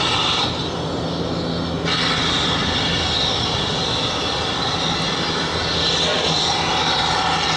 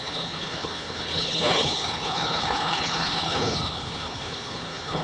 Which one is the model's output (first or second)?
second